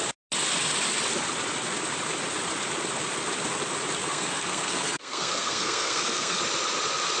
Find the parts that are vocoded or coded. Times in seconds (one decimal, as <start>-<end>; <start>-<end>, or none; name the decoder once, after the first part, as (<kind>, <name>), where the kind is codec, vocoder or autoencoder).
4.0-6.4 (codec, SNAC)